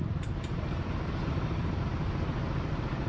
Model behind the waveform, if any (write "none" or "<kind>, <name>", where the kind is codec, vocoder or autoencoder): none